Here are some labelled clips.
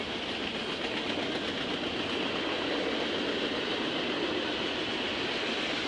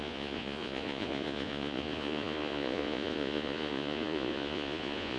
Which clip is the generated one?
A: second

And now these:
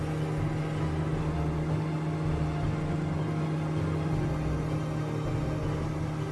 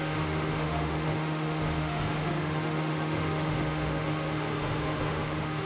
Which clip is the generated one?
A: second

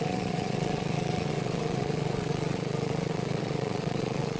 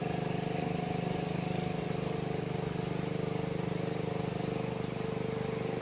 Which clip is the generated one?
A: first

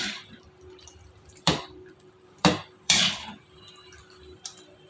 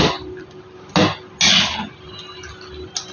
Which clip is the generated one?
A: first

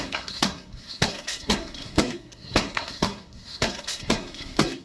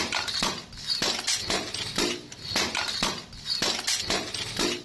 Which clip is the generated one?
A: first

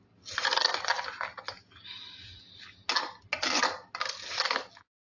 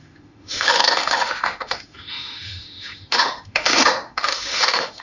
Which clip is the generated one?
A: second